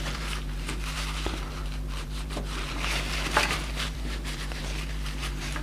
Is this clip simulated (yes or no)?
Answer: yes